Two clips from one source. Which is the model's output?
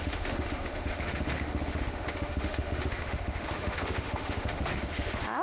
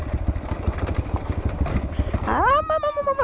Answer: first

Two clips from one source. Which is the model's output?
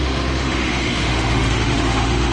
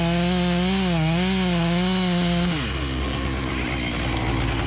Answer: first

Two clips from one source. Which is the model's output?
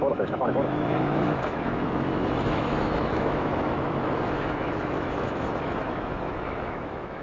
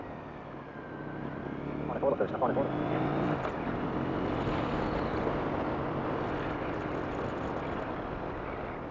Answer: first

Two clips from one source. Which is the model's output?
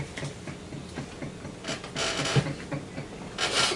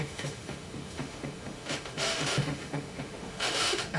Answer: second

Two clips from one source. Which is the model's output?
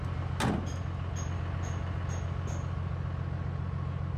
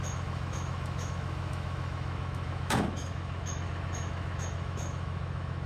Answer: second